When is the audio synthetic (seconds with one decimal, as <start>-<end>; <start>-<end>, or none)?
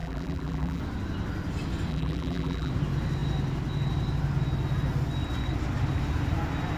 0.0-0.8; 1.9-2.7